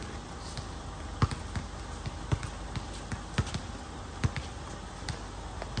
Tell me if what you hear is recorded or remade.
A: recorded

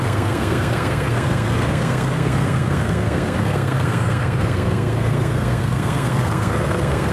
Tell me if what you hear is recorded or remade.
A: remade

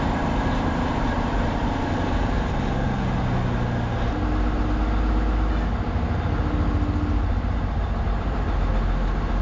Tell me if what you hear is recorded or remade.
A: recorded